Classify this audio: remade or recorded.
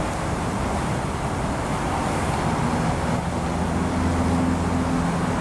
recorded